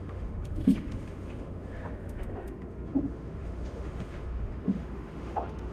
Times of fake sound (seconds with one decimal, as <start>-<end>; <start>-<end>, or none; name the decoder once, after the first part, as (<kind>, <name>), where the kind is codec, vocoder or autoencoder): 0.0-5.7 (autoencoder, DAC-VAE)